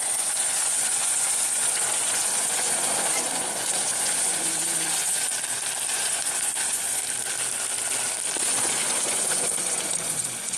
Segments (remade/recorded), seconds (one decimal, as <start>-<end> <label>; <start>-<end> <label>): 0.0-5.3 remade; 5.3-5.9 recorded; 5.9-7.0 remade; 7.0-8.4 recorded; 8.4-10.6 remade

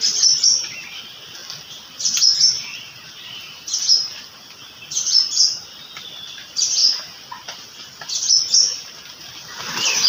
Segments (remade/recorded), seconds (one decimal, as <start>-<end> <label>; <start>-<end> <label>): 0.0-10.1 recorded

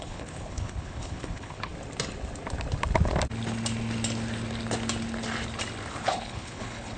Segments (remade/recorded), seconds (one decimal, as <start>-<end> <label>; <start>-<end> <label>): 0.0-1.7 remade; 1.7-5.9 recorded; 5.9-7.0 remade

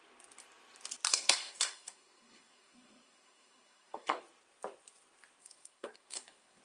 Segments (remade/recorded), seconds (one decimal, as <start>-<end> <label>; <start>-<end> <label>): 0.0-1.1 recorded; 1.1-4.2 remade; 4.2-5.4 recorded; 5.4-6.6 remade

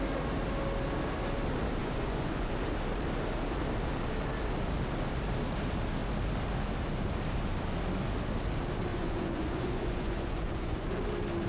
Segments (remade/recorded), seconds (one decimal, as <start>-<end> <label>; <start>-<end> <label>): 0.0-1.8 recorded; 1.8-2.5 remade; 2.5-8.9 recorded; 8.9-10.9 remade; 10.9-11.5 recorded

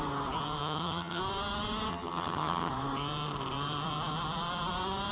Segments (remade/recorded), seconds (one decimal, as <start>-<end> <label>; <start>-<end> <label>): 0.0-0.6 recorded; 0.6-1.2 remade; 1.2-1.9 recorded; 1.9-2.7 remade; 2.7-5.1 recorded

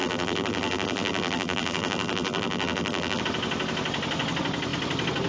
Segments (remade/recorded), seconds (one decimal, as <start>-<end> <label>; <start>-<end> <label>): 0.0-3.2 remade; 3.2-5.3 recorded